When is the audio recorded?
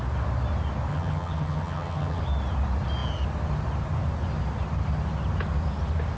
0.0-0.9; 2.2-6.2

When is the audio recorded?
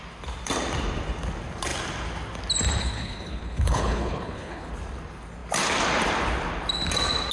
0.0-2.8; 4.7-7.3